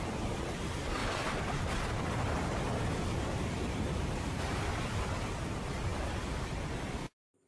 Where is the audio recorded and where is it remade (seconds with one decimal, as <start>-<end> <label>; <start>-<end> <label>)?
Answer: 0.0-1.0 recorded; 1.0-4.2 remade; 4.2-5.9 recorded; 5.9-6.7 remade; 6.7-7.5 recorded